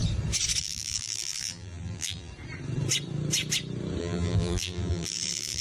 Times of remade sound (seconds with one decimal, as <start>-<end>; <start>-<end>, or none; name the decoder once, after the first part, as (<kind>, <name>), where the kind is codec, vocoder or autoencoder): 0.6-2.3 (vocoder, BigVGAN v2); 4.0-5.6